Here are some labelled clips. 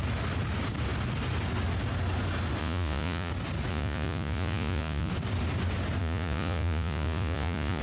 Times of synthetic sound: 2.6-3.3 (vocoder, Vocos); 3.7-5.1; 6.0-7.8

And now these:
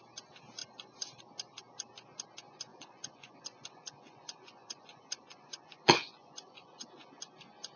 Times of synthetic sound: 2.7-7.2 (vocoder, Vocos)

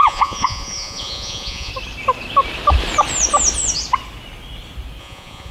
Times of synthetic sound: 0.0-1.7 (vocoder, Vocos); 5.0-5.5

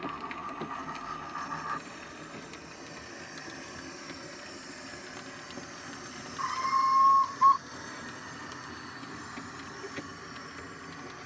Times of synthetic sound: none

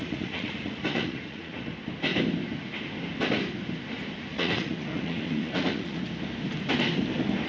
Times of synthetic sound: 0.0-1.7 (vocoder, Vocos); 4.3-6.0